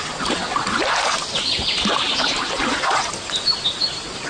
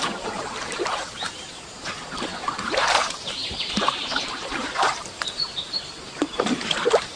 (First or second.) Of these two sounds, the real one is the first